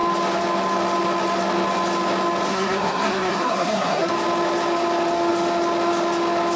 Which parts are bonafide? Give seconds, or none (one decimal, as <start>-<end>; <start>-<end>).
0.0-2.5; 4.1-6.6